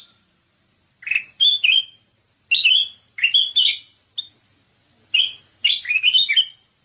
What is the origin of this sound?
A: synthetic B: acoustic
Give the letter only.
B